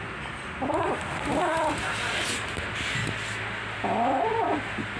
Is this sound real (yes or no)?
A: yes